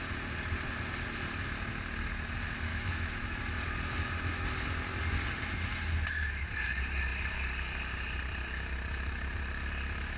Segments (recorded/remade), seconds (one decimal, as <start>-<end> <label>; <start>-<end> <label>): 0.0-2.7 recorded; 2.7-3.4 remade; 3.4-10.2 recorded